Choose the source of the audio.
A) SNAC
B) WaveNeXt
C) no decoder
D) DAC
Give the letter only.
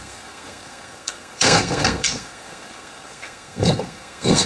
A